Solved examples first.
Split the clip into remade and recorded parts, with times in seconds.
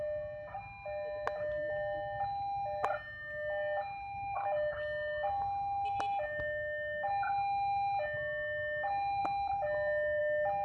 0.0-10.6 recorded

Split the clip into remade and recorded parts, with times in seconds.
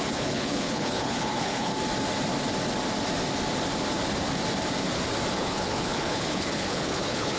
0.0-1.7 remade; 1.7-5.3 recorded; 5.3-7.4 remade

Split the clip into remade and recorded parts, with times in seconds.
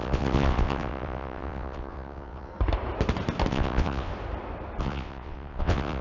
0.0-2.5 remade; 2.5-3.5 recorded; 3.5-4.1 remade; 4.1-4.8 recorded; 4.8-6.0 remade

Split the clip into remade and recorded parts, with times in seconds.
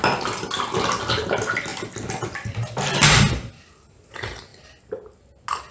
0.0-5.7 recorded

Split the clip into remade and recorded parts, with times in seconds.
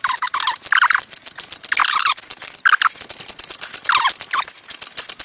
0.0-1.8 recorded; 1.8-2.4 remade; 2.4-5.2 recorded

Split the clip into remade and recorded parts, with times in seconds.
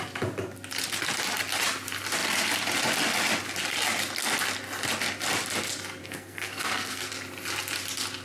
0.0-6.0 recorded; 6.0-7.1 remade; 7.1-8.2 recorded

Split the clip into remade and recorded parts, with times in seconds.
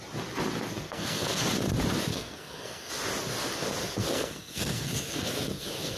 0.0-0.7 recorded; 0.7-1.4 remade; 1.4-2.1 recorded; 2.1-2.9 remade; 2.9-3.8 recorded; 3.8-6.0 remade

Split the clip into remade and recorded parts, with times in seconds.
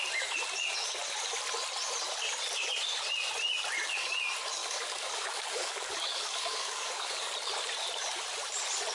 0.0-4.6 recorded; 4.6-7.3 remade; 7.3-8.9 recorded